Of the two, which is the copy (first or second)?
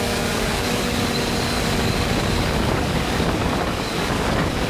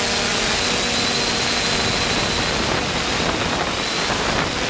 first